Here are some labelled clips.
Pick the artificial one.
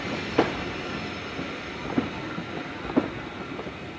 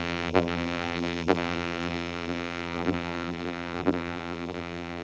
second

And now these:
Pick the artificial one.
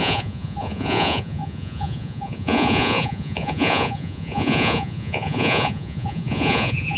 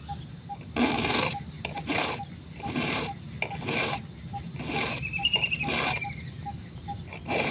first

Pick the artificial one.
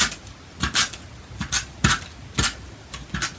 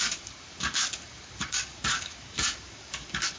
second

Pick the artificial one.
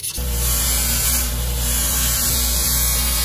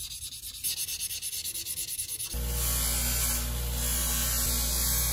first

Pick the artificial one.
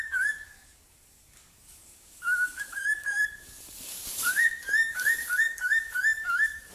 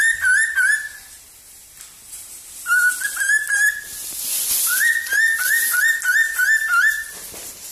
first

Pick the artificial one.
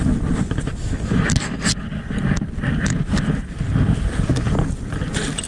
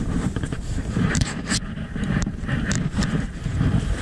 second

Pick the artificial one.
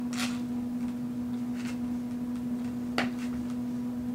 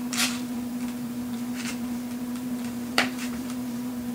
second